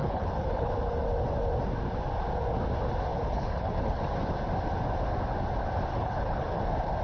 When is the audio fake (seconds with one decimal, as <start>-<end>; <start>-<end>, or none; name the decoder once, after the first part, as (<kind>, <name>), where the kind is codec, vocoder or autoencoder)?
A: 0.0-0.7 (codec, HILCodec); 3.1-4.0; 5.9-6.6

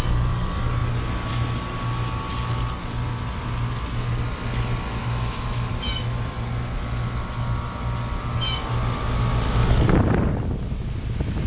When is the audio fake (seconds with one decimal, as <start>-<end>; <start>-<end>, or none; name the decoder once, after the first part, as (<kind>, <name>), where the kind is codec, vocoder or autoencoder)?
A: 5.0-5.7 (autoencoder, DAC-VAE)

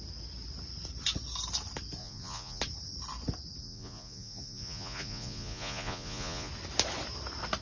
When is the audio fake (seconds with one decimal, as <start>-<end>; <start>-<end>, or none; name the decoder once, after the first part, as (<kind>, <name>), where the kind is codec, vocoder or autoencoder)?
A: 2.0-2.6 (vocoder, Vocos); 3.6-6.5

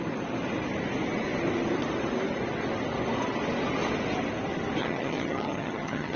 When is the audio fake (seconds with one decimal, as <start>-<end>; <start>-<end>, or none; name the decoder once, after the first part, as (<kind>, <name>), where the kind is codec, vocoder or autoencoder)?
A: 4.8-6.2 (vocoder, HiFi-GAN)